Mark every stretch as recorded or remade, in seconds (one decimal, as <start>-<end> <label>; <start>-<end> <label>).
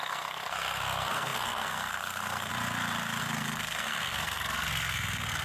0.0-2.5 remade; 2.5-3.2 recorded; 3.2-5.4 remade